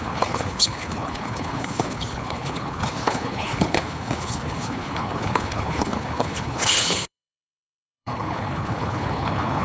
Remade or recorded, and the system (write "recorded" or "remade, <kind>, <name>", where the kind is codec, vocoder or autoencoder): remade, codec, HILCodec